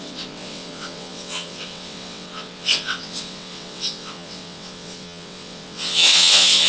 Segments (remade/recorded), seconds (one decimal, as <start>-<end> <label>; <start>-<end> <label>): 0.0-6.7 remade